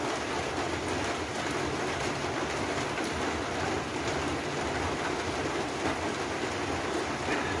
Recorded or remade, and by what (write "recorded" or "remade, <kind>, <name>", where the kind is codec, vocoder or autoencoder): recorded